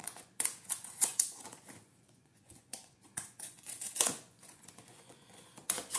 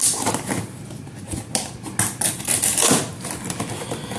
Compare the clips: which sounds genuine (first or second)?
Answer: second